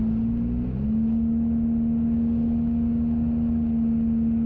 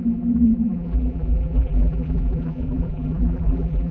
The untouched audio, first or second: first